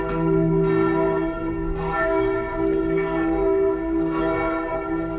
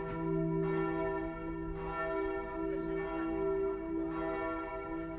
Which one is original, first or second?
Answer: second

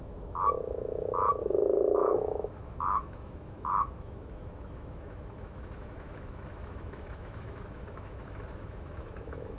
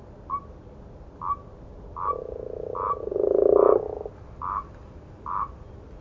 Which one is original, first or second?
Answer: second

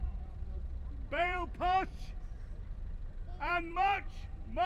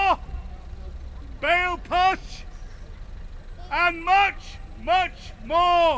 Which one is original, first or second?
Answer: second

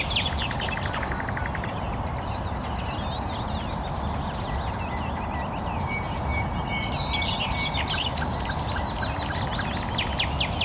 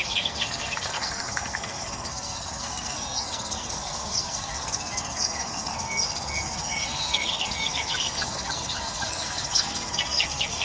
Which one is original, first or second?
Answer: first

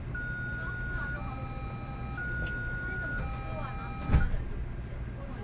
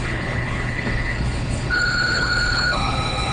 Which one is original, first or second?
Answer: first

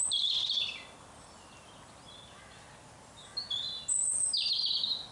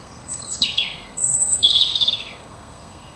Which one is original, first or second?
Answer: first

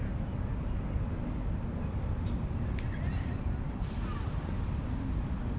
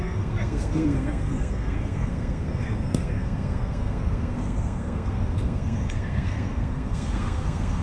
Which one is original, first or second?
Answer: first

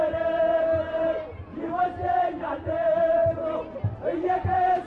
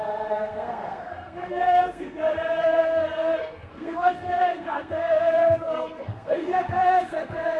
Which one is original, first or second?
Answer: first